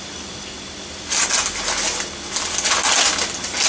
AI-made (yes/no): no